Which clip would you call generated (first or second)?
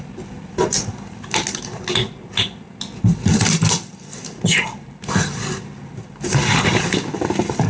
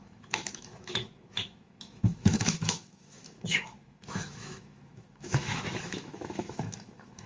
second